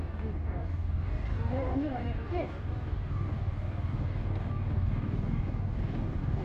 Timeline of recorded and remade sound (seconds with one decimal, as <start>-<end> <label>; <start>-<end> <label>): 0.0-6.4 remade

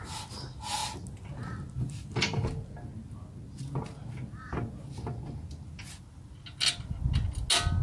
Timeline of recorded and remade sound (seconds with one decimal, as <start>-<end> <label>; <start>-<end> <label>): 0.0-7.8 recorded

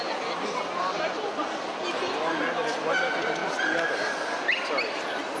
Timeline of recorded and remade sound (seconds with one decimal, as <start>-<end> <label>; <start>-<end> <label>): 0.0-5.4 recorded

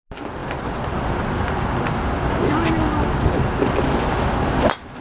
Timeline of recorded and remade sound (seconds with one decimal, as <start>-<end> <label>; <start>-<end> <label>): 0.0-5.0 recorded

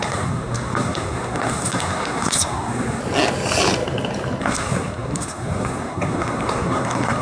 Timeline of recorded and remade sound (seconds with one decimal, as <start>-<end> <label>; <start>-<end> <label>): 0.0-3.0 remade; 3.0-4.4 recorded; 4.4-7.2 remade

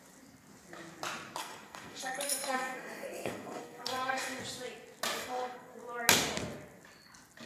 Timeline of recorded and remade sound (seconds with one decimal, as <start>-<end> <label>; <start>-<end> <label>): 0.0-1.4 recorded; 1.4-4.4 remade; 4.4-5.2 recorded; 5.2-5.7 remade; 5.7-7.5 recorded

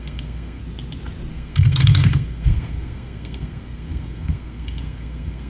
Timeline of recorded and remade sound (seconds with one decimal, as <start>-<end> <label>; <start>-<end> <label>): 0.0-0.6 remade; 0.6-1.3 recorded; 1.3-5.5 remade

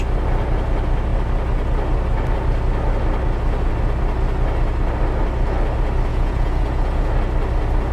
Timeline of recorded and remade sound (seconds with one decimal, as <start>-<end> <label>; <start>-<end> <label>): 0.0-6.1 recorded; 6.1-7.1 remade; 7.1-7.9 recorded